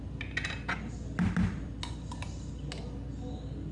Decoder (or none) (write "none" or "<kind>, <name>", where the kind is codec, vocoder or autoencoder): none